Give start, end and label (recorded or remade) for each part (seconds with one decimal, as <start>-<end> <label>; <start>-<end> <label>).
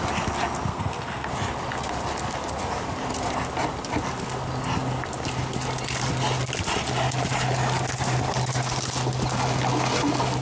0.0-0.7 recorded; 0.7-1.3 remade; 1.3-10.4 recorded